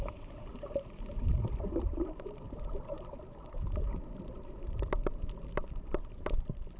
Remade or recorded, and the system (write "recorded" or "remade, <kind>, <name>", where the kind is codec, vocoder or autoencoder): remade, vocoder, BigVGAN v2